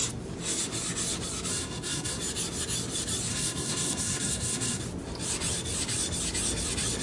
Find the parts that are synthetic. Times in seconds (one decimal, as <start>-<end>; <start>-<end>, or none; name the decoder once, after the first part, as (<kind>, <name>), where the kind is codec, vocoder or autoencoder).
1.5-2.2 (codec, SNAC); 3.3-4.8